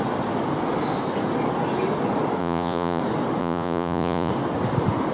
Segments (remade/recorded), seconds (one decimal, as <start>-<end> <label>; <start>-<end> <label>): 0.0-2.4 recorded; 2.4-3.0 remade; 3.0-3.4 recorded; 3.4-4.3 remade; 4.3-5.1 recorded